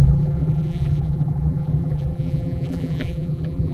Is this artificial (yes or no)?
yes